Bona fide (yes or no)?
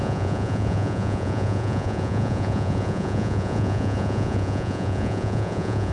no